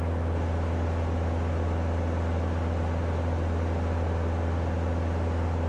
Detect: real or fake real